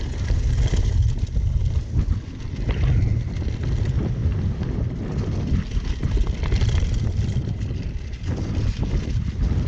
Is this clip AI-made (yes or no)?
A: no